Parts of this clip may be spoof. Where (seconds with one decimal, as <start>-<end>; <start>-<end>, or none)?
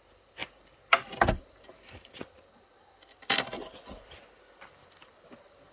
none